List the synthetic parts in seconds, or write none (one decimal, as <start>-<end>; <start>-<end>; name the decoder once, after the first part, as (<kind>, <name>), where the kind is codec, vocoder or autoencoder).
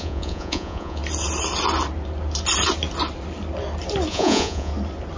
0.0-1.0 (vocoder, Vocos); 4.1-4.7